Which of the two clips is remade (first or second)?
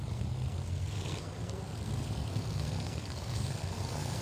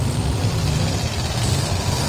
first